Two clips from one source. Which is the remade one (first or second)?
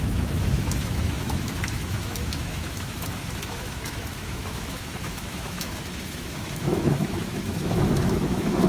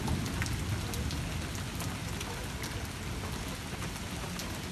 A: first